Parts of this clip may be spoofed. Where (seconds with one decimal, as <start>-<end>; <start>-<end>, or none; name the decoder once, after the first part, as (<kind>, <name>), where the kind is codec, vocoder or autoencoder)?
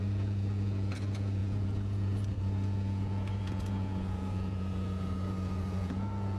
0.0-6.4 (vocoder, Vocos)